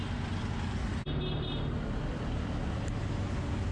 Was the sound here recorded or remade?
recorded